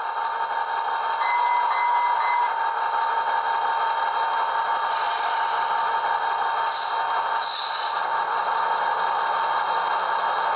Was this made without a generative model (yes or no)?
yes